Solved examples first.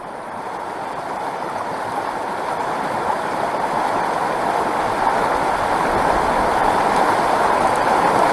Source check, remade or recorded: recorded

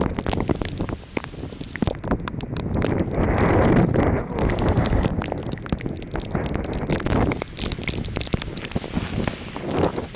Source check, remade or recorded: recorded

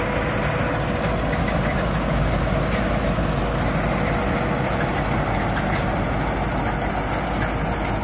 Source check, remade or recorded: recorded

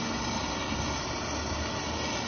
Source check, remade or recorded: recorded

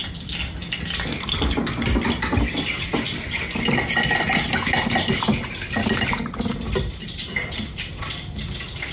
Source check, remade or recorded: recorded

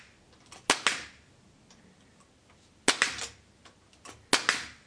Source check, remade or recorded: recorded